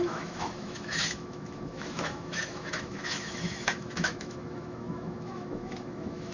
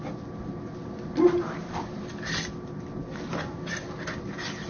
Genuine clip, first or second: second